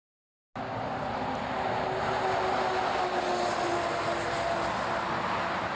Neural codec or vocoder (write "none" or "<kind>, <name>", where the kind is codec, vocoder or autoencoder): none